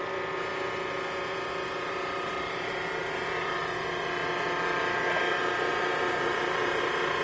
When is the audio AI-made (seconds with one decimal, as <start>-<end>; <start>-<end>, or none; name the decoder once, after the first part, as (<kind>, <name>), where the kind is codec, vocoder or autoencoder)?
5.7-6.8 (vocoder, BigVGAN v2)